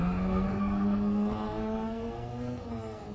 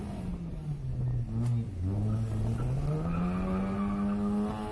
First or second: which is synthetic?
first